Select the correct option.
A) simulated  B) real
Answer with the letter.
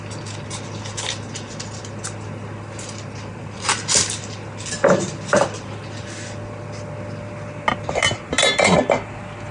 B